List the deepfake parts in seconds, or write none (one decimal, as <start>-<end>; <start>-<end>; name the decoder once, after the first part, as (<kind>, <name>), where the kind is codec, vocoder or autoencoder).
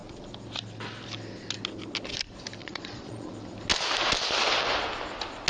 2.6-3.3 (vocoder, Vocos)